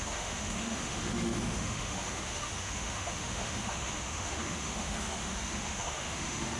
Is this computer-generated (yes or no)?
yes